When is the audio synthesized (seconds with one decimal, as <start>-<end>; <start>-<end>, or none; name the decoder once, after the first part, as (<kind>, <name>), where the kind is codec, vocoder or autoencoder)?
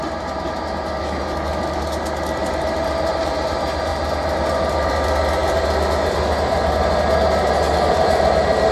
1.0-1.6 (autoencoder, DAC-VAE)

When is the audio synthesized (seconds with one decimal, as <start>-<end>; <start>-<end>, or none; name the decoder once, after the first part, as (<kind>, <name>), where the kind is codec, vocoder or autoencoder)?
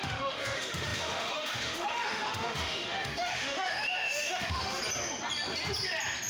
0.0-4.8 (autoencoder, DAC-VAE)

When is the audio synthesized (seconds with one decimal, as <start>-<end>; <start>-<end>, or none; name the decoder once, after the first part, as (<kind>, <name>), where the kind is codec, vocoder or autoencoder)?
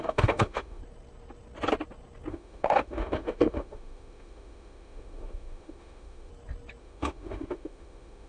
0.0-0.8 (autoencoder, DAC-VAE); 2.3-6.3; 6.8-8.3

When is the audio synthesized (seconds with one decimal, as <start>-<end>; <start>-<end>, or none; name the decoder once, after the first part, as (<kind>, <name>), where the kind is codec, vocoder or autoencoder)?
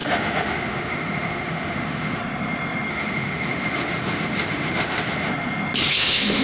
0.0-2.2 (autoencoder, DAC-VAE); 2.9-5.3; 5.9-6.4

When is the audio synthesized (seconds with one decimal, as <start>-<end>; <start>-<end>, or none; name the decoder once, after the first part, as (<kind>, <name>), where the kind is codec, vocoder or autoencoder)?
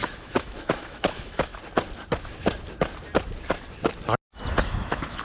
0.0-1.5 (autoencoder, DAC-VAE); 4.6-5.2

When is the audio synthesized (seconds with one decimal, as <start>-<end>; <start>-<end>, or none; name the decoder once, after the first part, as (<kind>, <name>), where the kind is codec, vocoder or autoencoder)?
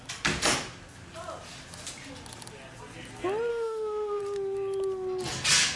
3.5-4.2 (autoencoder, DAC-VAE)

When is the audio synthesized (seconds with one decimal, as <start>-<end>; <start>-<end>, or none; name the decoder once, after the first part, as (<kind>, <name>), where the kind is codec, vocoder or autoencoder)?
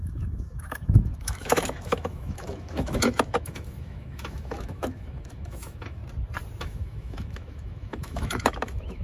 0.0-6.0 (autoencoder, DAC-VAE); 6.6-9.0